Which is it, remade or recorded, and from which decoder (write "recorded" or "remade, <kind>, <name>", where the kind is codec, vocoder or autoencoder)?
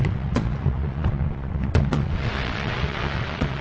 remade, vocoder, WaveNeXt